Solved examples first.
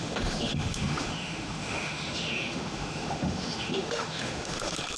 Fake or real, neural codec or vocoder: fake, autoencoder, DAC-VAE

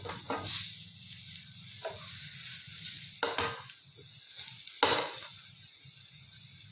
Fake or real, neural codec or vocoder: real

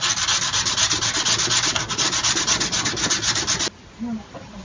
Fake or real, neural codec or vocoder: real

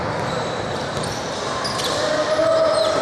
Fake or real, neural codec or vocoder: real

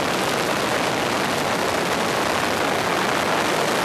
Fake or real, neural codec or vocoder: real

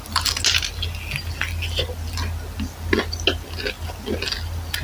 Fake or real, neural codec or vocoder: real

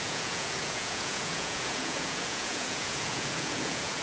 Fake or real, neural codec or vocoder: fake, vocoder, Vocos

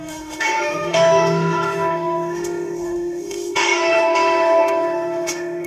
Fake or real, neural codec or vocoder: fake, autoencoder, DAC-VAE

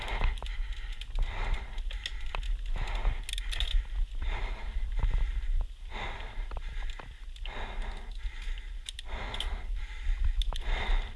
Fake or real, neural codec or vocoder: real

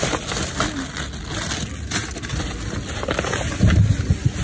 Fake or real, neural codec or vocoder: real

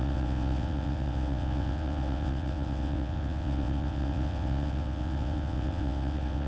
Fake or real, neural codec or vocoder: fake, vocoder, WaveNeXt